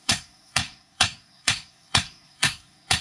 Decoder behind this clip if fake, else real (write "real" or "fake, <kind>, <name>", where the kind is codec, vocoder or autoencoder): fake, codec, SNAC